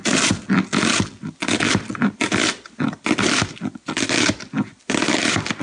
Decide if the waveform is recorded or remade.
recorded